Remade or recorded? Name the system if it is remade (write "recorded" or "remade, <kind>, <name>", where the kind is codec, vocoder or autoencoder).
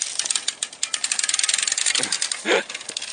recorded